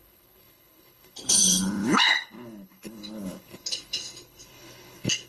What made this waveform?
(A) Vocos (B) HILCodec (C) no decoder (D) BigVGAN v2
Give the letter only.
B